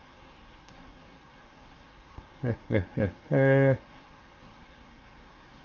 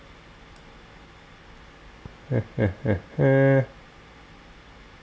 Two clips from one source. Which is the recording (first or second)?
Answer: second